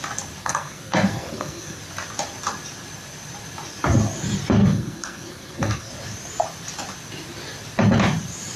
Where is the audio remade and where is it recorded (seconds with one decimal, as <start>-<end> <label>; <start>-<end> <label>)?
0.0-0.4 recorded; 0.4-1.8 remade; 1.8-4.6 recorded; 4.6-5.9 remade; 5.9-8.6 recorded